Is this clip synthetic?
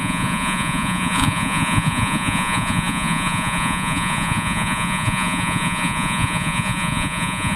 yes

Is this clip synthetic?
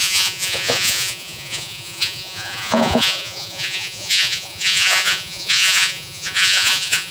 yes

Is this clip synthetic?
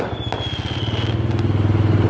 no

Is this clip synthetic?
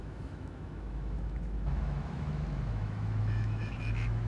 yes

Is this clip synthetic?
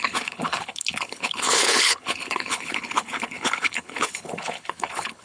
yes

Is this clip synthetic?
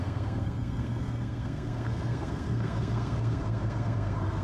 yes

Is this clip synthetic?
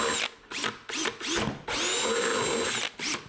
no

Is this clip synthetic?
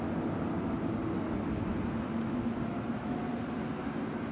no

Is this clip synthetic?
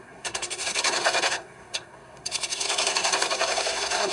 yes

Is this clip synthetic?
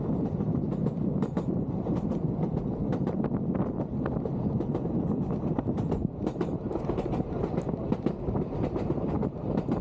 no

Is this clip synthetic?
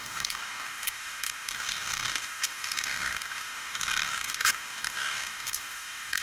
yes